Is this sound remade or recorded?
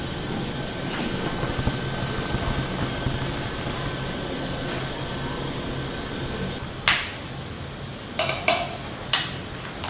recorded